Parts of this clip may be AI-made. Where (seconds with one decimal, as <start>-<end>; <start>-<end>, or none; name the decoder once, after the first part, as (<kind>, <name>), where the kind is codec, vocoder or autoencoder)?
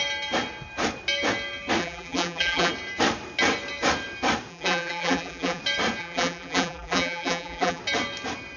1.8-2.7 (vocoder, BigVGAN v2); 4.5-5.6; 6.0-7.8